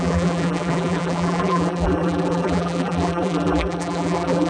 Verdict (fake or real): fake